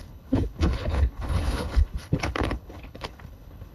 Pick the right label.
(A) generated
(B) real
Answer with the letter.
A